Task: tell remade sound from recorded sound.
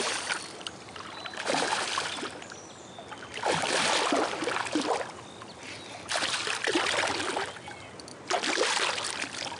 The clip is recorded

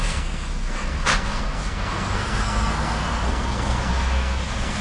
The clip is remade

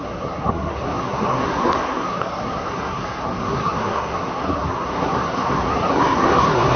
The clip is remade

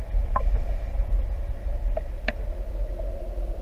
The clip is recorded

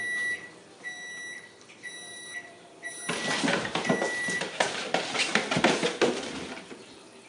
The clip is recorded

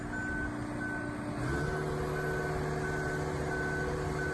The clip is recorded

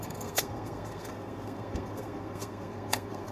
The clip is remade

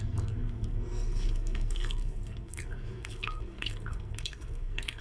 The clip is remade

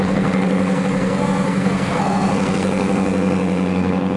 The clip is remade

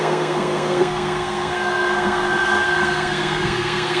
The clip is remade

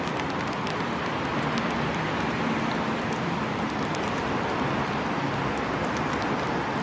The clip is recorded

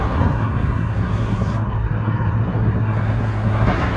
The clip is remade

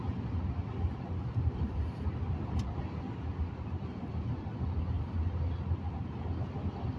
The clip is recorded